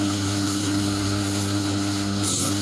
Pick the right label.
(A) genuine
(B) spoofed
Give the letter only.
B